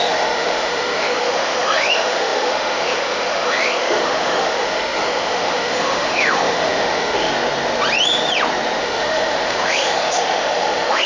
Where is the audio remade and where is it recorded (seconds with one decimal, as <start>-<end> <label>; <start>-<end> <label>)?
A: 0.0-7.3 remade; 7.3-8.8 recorded; 8.8-11.1 remade